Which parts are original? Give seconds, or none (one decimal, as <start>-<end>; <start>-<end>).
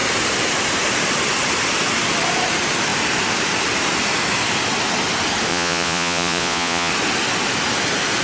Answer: 0.0-5.5; 6.9-8.2